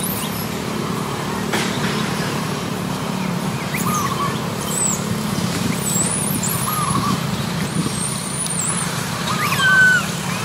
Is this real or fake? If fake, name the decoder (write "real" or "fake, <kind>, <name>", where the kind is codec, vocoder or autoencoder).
fake, vocoder, BigVGAN v2